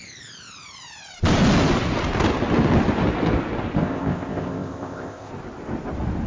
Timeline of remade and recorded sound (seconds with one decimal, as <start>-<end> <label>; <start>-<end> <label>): 0.0-3.8 recorded; 3.8-5.3 remade; 5.3-6.3 recorded